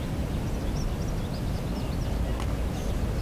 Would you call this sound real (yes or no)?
yes